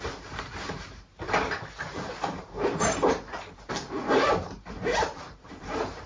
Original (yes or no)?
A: no